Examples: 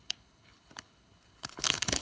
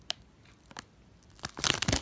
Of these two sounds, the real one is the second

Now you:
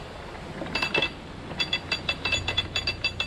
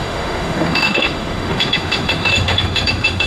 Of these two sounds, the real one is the first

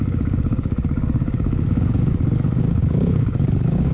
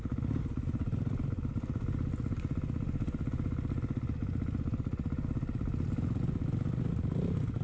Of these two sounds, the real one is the second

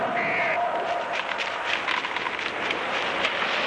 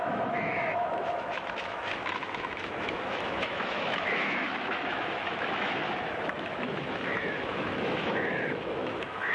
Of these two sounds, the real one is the first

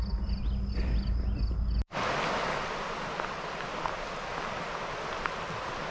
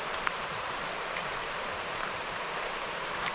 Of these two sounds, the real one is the first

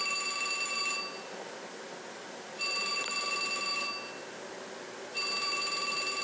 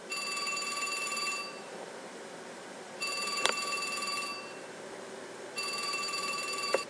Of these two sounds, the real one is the first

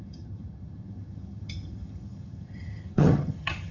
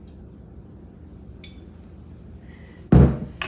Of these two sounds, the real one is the second